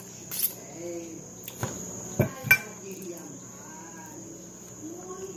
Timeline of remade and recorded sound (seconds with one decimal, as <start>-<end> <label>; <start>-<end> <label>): 0.0-5.4 recorded